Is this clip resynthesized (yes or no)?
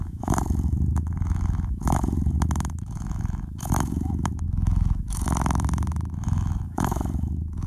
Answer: yes